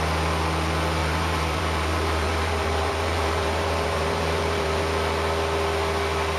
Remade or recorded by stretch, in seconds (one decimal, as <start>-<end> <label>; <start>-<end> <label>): 0.0-1.0 recorded; 1.0-4.8 remade; 4.8-6.4 recorded